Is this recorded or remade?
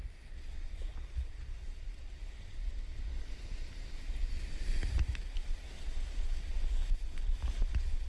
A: recorded